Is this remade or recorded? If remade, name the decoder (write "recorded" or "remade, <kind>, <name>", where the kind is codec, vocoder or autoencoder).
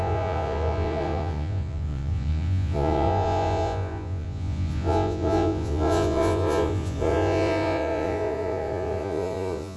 remade, vocoder, Vocos